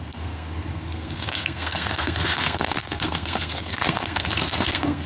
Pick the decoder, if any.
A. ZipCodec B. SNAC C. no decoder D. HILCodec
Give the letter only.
B